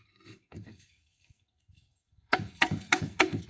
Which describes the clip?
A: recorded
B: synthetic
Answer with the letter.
B